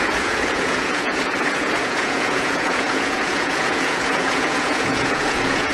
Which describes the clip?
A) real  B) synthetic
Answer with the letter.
B